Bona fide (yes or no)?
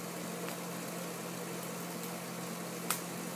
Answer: yes